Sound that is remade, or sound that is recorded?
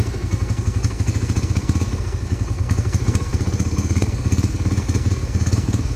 remade